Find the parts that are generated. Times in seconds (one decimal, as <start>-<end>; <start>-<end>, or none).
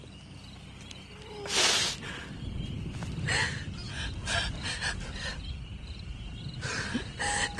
none